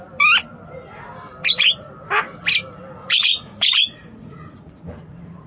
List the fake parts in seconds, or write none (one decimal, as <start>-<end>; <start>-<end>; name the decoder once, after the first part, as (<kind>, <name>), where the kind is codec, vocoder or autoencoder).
3.0-5.5 (vocoder, Vocos)